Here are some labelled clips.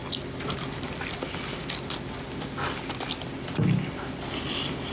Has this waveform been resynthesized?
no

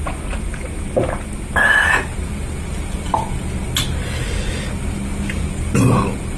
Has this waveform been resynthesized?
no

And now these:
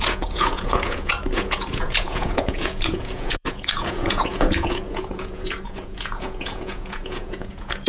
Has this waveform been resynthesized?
yes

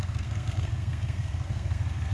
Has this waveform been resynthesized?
yes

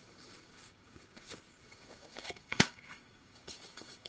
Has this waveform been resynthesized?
yes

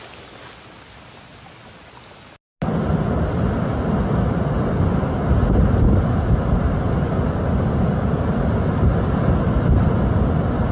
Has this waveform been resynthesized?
no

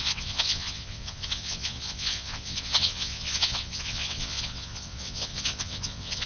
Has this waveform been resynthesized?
yes